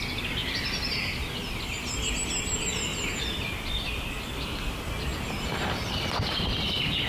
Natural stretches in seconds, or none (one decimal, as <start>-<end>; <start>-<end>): 0.0-2.9; 3.7-7.1